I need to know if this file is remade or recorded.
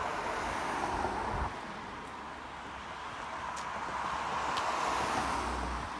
recorded